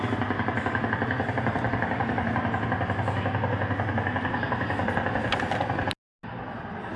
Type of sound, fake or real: real